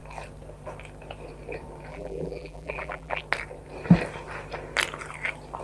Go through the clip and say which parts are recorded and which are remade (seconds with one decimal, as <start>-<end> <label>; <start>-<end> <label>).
0.0-1.9 recorded; 1.9-3.2 remade; 3.2-5.6 recorded